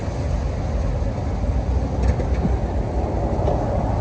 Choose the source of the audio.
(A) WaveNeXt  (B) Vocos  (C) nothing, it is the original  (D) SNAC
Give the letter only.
C